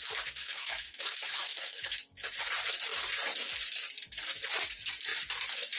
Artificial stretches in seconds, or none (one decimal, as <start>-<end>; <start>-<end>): 0.5-2.4